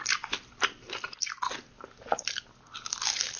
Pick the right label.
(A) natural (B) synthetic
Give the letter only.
A